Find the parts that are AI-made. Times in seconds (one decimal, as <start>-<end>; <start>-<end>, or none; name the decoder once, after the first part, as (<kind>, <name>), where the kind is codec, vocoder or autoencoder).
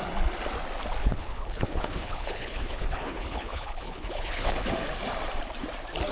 1.0-4.7 (codec, HILCodec)